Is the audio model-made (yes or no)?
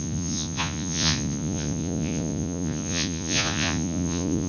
yes